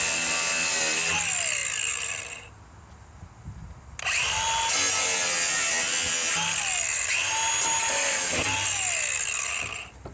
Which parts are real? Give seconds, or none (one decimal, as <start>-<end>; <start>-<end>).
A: 0.0-10.1